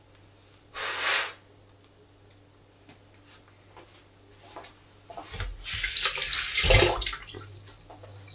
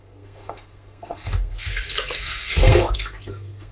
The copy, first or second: second